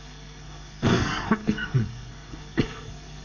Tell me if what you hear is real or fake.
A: fake